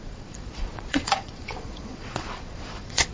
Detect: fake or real fake